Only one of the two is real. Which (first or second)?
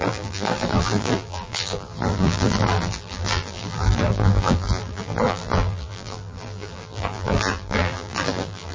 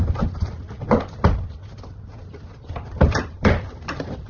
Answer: second